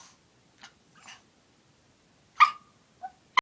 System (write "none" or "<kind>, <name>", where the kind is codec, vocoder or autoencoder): none